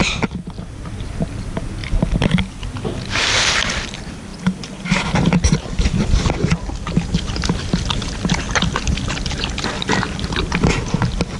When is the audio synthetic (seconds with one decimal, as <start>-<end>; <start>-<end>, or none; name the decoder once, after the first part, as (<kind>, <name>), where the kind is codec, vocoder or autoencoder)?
none